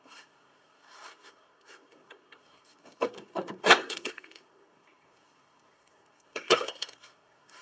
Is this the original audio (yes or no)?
no